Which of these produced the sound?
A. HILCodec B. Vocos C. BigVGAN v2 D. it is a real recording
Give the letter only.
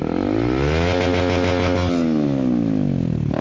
D